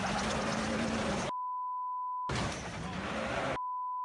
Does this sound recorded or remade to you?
recorded